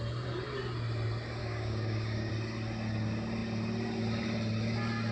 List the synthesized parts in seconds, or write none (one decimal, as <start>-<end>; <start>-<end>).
1.4-2.3